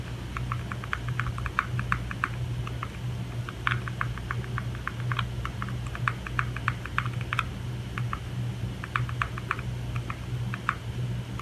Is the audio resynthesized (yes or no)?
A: no